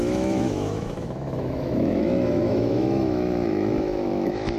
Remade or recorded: remade